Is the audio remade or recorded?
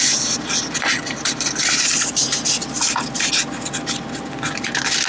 recorded